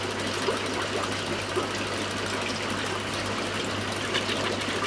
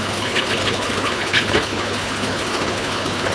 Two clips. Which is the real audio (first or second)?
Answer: first